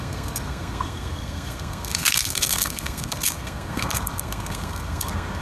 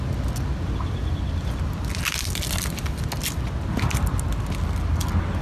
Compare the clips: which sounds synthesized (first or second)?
first